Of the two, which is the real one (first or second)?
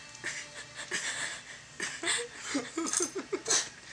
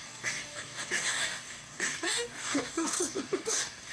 first